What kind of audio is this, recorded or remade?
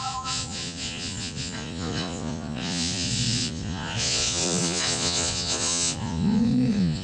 remade